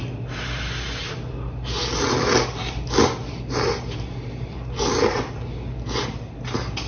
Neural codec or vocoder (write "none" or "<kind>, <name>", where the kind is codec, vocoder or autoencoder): none